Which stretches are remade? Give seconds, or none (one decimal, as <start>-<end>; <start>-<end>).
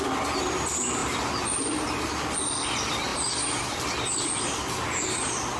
none